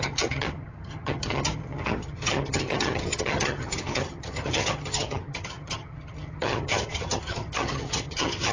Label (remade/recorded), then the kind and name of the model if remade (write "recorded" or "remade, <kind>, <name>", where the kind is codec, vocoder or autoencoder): remade, vocoder, HiFi-GAN